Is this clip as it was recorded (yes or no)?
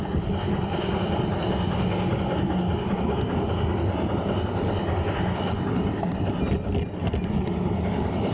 yes